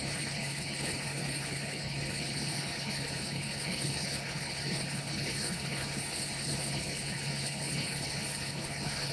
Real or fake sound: fake